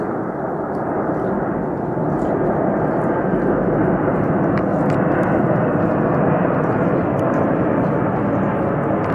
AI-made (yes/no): no